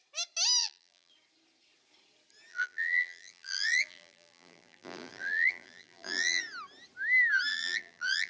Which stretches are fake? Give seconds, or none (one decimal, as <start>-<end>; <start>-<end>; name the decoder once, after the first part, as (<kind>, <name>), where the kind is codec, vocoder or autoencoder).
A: 0.6-1.1 (vocoder, BigVGAN v2); 2.5-6.4; 7.5-8.3